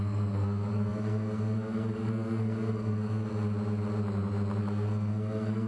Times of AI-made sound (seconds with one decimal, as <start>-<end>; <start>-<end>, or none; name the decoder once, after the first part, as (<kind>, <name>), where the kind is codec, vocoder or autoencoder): 0.0-3.3 (codec, SNAC); 4.6-5.7